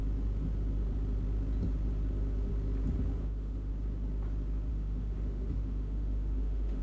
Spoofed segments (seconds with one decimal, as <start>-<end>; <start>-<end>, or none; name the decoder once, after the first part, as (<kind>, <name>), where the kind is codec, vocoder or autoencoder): 3.2-3.7 (autoencoder, DAC-VAE); 4.7-6.8